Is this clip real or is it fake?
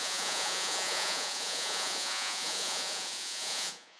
fake